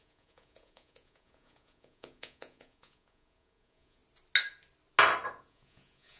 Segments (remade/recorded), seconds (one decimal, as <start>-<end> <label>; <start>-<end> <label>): 0.0-4.0 remade; 4.0-5.3 recorded; 5.3-6.2 remade